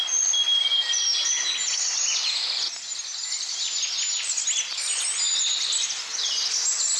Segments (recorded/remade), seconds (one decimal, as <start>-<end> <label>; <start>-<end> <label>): 0.0-7.0 recorded